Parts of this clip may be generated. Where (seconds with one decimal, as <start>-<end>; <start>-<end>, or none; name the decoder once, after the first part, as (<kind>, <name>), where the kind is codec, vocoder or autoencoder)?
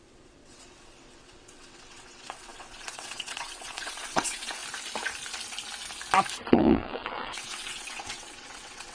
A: 0.0-4.6 (vocoder, WaveNeXt); 6.5-8.9